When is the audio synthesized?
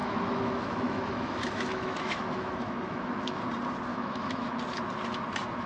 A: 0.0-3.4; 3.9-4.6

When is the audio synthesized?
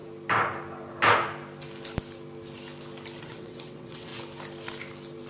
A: 3.2-4.1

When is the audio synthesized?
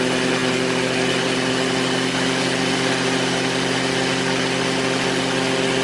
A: none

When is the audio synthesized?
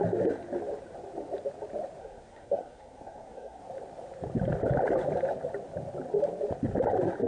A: 2.0-3.6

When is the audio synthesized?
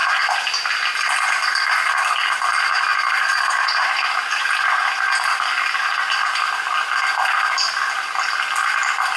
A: 2.9-4.9; 5.8-6.4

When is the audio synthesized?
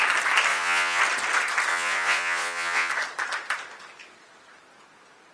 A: 0.5-1.0; 1.7-2.9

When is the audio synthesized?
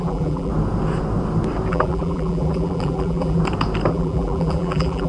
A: 0.0-0.5; 1.7-3.4; 3.9-5.1